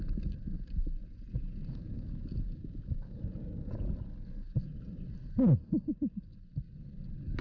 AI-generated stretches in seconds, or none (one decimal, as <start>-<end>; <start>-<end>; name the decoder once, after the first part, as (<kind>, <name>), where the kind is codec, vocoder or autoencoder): 1.0-4.0 (vocoder, Vocos)